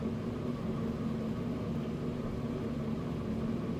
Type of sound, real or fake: real